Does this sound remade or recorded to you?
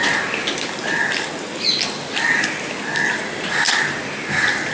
recorded